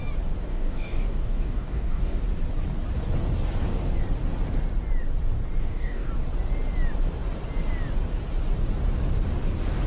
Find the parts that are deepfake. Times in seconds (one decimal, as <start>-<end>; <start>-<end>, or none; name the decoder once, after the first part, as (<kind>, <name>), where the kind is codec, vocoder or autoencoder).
0.5-2.2 (codec, DAC); 5.6-6.1